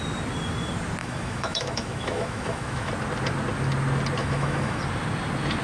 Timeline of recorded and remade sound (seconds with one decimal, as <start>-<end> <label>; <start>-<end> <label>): 0.0-1.0 recorded; 1.0-2.9 remade; 2.9-4.2 recorded; 4.2-4.8 remade; 4.8-5.6 recorded